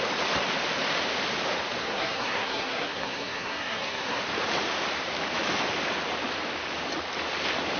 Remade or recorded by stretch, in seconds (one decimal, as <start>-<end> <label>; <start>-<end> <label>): 0.0-1.8 recorded; 1.8-4.2 remade; 4.2-7.8 recorded